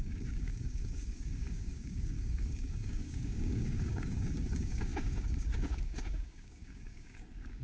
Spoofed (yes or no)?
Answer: yes